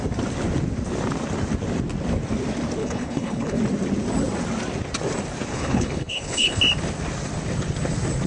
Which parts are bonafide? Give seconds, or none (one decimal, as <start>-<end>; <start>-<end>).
0.0-2.8; 3.6-5.5; 6.6-8.3